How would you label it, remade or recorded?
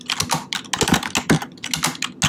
recorded